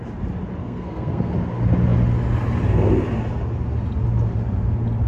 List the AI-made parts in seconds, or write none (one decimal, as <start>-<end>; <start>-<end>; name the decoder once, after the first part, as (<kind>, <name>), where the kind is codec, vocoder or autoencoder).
0.6-1.3 (codec, SNAC)